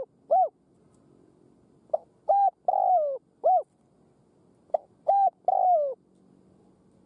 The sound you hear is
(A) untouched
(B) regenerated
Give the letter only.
A